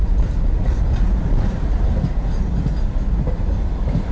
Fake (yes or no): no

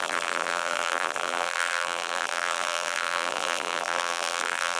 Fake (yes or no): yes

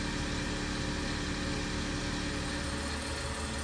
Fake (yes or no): no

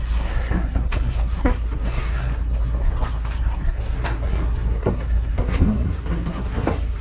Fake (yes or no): yes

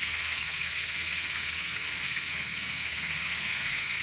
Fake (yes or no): yes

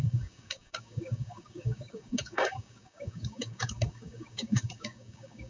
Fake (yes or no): yes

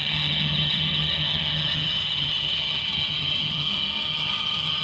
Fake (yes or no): yes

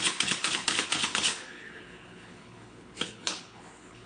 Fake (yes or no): yes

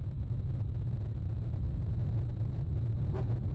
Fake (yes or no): no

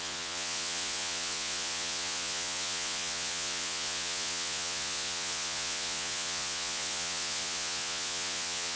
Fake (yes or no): yes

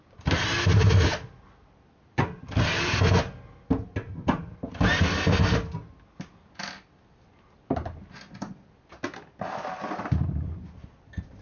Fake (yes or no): no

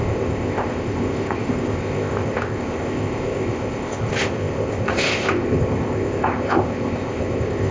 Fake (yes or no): yes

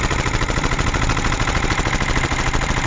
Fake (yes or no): no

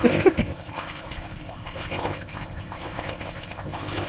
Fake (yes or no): yes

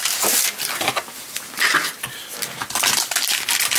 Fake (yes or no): no